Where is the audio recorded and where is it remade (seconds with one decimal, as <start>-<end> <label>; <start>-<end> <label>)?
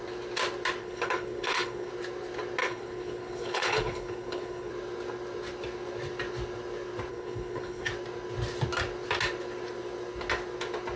0.0-0.8 recorded; 0.8-1.9 remade; 1.9-2.6 recorded; 2.6-4.7 remade; 4.7-7.1 recorded; 7.1-7.9 remade; 7.9-11.0 recorded